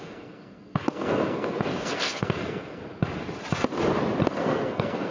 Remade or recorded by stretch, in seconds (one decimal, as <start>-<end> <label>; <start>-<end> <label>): 0.0-2.8 remade; 2.8-4.3 recorded; 4.3-5.1 remade